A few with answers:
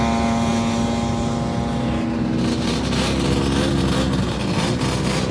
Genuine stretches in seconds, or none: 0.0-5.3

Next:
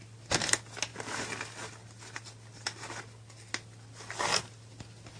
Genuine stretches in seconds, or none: 0.0-5.2

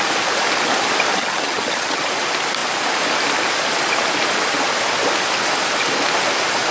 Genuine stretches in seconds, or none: 0.0-1.1; 2.1-6.7

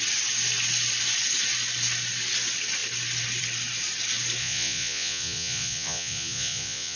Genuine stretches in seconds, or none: 0.0-4.4